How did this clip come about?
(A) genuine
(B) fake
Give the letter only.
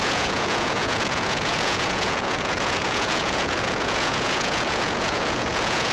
B